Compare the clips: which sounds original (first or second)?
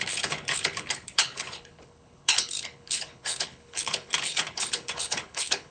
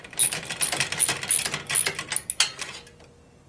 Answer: second